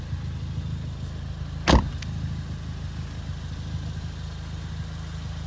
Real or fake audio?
real